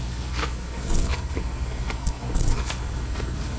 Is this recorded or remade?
remade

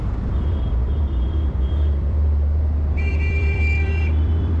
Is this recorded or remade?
remade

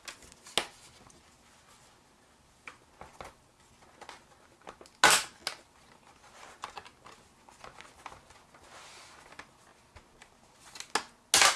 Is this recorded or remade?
recorded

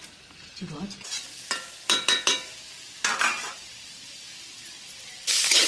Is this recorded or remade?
recorded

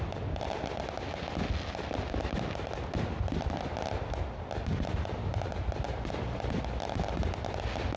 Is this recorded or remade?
recorded